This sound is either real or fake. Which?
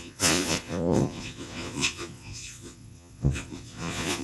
fake